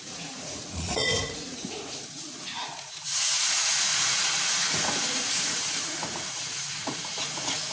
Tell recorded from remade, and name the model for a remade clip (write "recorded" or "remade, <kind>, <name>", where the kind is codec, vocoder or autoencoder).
remade, vocoder, Vocos